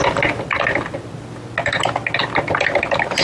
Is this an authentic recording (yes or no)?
yes